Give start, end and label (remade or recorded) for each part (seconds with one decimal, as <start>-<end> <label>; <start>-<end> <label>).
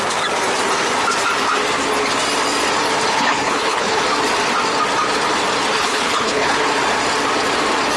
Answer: 0.0-3.1 recorded; 3.1-4.0 remade; 4.0-5.7 recorded; 5.7-6.6 remade; 6.6-8.0 recorded